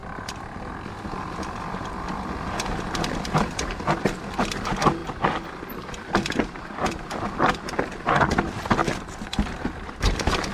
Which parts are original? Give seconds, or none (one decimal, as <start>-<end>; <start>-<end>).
0.0-10.5